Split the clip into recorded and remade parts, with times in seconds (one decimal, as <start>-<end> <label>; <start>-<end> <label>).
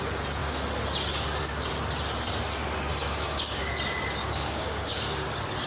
0.0-2.9 recorded; 2.9-3.7 remade; 3.7-4.2 recorded; 4.2-5.0 remade; 5.0-5.7 recorded